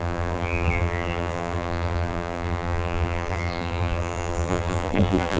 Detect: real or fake fake